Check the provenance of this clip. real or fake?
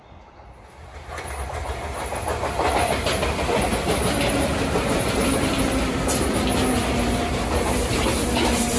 real